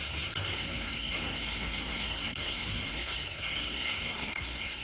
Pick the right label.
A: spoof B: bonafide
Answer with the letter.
A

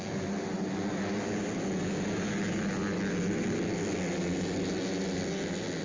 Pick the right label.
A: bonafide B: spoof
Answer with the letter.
A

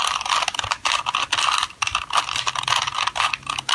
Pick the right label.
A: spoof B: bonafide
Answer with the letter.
B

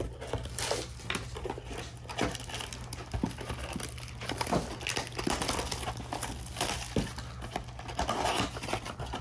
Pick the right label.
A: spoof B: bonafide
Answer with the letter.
B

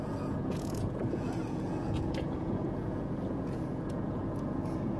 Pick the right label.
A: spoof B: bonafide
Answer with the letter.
A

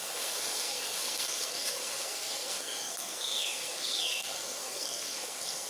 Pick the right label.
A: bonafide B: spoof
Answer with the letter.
B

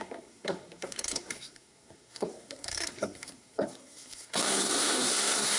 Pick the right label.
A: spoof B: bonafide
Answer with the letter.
A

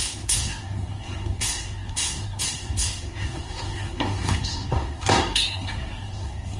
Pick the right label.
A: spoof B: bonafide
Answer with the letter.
A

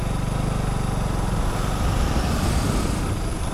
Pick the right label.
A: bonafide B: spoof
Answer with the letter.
A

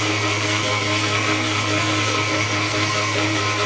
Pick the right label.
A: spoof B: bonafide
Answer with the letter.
A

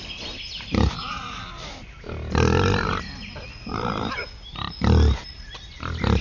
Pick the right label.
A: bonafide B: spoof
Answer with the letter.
A